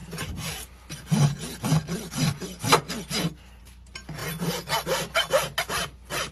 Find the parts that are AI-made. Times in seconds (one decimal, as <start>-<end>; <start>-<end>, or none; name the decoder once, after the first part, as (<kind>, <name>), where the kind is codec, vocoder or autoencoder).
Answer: none